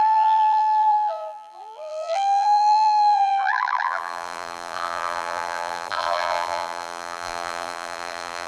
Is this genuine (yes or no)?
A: no